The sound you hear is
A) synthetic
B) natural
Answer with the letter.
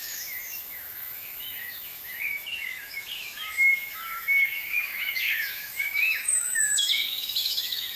A